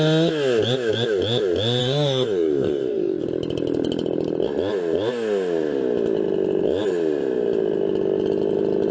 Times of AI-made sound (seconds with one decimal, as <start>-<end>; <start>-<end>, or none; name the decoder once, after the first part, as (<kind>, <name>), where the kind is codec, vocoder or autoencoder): 1.8-3.2 (codec, DAC)

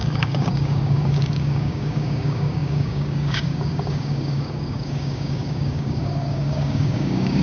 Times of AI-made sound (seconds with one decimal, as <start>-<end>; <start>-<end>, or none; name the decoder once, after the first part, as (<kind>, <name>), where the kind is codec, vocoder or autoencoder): 0.0-7.4 (codec, DAC)

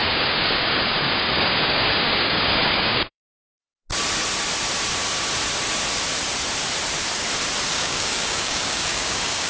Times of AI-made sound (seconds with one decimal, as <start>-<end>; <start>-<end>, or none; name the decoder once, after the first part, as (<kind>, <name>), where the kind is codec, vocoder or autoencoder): 0.0-3.6 (codec, DAC); 7.7-9.5

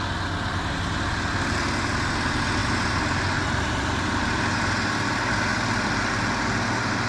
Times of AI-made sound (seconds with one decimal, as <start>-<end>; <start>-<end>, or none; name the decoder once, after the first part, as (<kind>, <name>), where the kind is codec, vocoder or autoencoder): none

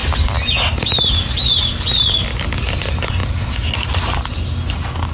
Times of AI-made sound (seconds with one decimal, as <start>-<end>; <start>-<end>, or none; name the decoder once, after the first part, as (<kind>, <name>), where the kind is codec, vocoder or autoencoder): 2.3-2.8 (codec, DAC)

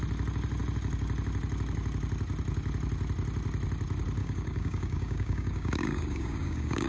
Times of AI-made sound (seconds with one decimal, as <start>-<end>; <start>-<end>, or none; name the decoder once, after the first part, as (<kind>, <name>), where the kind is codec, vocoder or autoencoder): 4.2-6.9 (codec, DAC)

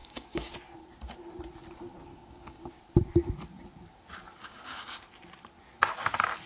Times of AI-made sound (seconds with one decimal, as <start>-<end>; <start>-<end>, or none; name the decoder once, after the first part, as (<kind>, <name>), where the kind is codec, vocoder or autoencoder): 0.0-0.5 (codec, DAC); 2.1-2.8; 4.4-5.0

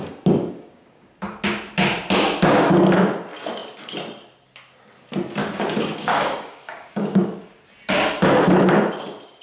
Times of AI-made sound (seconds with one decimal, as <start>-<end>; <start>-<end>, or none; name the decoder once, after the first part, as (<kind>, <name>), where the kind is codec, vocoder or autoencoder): 0.4-1.1 (codec, DAC); 5.4-7.5